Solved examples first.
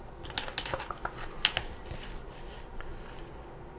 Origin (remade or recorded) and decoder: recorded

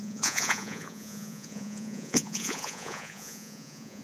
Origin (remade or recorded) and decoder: remade, vocoder, Vocos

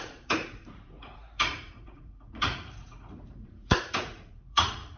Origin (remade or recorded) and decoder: remade, vocoder, Vocos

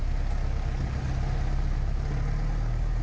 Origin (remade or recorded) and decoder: recorded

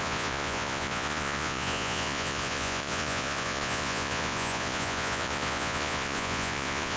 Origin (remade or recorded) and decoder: remade, vocoder, Vocos